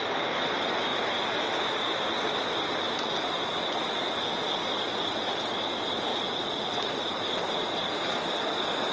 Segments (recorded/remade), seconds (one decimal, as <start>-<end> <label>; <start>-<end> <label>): 0.0-0.9 recorded; 0.9-1.4 remade; 1.4-6.1 recorded; 6.1-7.1 remade; 7.1-8.9 recorded